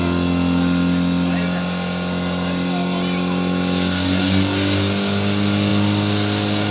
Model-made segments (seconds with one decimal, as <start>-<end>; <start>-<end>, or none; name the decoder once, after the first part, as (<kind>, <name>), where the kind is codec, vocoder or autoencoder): none